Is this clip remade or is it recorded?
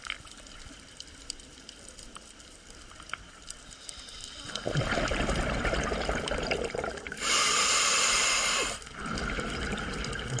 remade